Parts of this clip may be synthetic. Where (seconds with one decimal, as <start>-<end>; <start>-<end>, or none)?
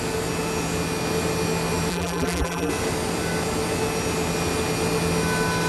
1.9-2.7